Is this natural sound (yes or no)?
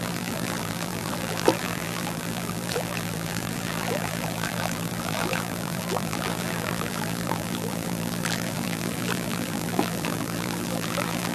no